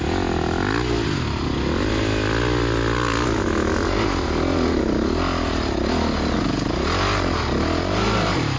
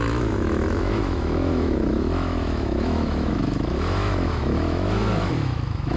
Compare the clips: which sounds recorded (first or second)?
first